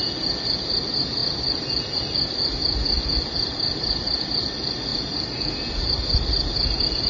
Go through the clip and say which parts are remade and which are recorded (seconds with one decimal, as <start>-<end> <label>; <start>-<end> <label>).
0.0-7.1 recorded